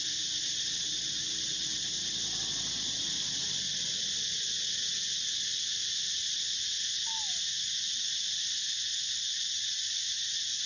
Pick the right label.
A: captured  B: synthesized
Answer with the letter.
A